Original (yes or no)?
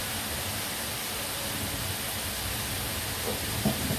yes